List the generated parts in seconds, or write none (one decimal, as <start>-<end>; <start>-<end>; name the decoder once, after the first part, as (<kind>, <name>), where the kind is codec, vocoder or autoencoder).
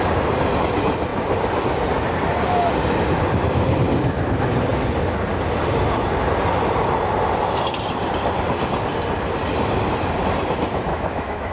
10.9-11.5 (autoencoder, DAC-VAE)